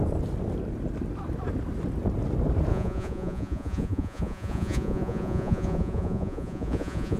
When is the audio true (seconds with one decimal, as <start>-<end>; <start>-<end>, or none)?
0.0-2.7